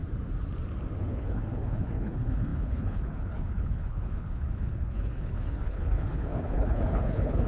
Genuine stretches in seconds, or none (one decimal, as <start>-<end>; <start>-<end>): 0.0-1.0